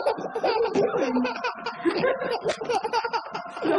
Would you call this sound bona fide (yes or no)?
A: yes